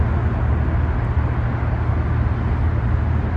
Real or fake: real